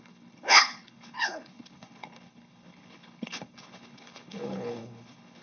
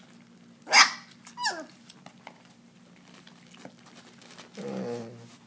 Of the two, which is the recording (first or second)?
second